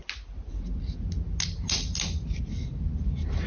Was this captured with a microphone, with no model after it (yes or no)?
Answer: yes